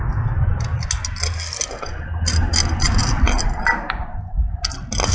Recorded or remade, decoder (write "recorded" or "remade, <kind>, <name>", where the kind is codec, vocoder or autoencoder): recorded